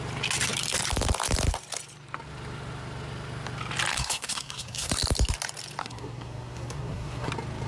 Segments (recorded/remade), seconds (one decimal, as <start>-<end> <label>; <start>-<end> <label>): 0.0-3.9 recorded; 3.9-4.9 remade; 4.9-5.8 recorded; 5.8-7.3 remade; 7.3-7.7 recorded